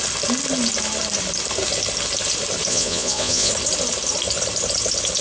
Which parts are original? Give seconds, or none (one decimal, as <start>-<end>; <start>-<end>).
0.0-2.7; 3.5-5.2